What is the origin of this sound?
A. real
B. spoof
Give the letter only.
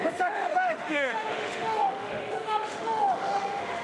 B